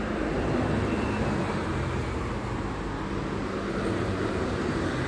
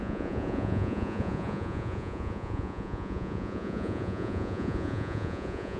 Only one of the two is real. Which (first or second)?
first